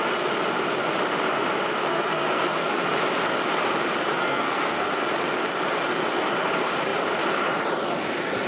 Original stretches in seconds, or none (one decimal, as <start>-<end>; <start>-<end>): 0.0-1.8; 2.8-4.2; 5.0-8.5